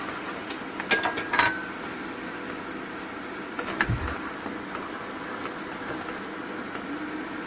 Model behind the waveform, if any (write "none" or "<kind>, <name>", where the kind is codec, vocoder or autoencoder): none